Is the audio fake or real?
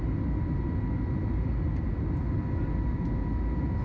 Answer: real